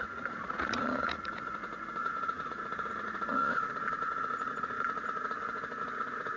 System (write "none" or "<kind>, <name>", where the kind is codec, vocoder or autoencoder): vocoder, Vocos